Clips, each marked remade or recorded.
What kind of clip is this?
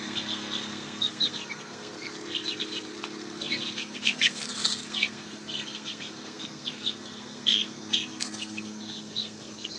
remade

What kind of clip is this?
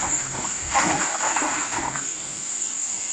remade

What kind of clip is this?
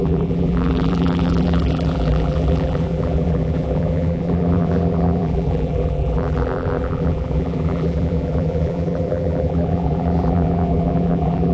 remade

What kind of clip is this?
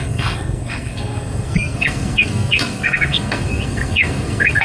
remade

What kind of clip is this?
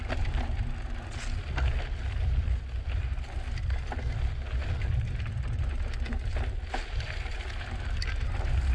recorded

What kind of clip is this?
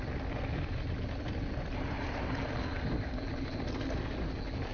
recorded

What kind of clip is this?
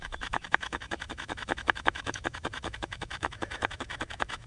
remade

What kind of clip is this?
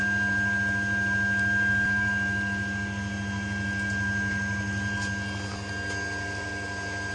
recorded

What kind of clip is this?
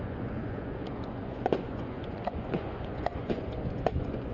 remade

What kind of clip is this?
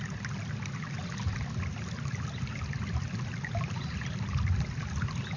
recorded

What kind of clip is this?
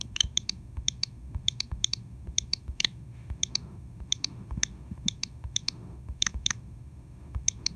remade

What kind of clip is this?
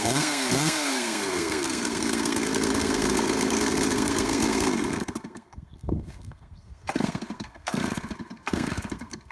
remade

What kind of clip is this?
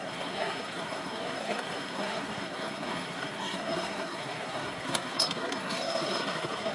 remade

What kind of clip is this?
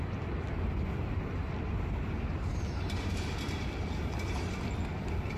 recorded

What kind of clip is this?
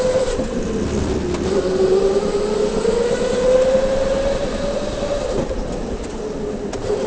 recorded